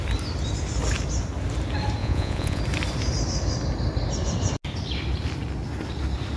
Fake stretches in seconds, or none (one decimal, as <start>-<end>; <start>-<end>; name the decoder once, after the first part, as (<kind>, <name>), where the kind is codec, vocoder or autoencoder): 2.0-2.6 (vocoder, Vocos)